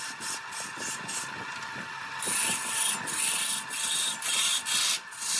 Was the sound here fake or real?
real